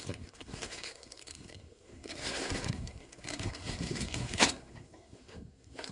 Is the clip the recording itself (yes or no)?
no